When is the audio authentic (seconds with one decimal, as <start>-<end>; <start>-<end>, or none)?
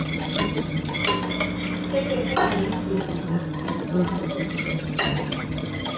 1.0-3.0